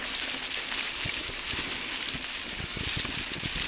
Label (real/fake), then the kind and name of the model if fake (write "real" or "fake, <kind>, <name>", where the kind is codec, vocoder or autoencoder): real